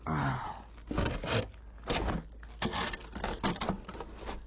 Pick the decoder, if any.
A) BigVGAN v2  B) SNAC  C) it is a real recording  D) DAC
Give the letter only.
C